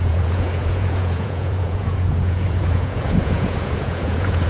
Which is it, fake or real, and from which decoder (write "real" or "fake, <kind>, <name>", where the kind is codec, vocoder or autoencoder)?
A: fake, vocoder, Vocos